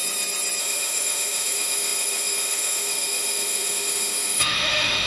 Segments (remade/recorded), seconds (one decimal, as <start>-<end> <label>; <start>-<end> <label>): 0.0-0.6 recorded; 0.6-5.1 remade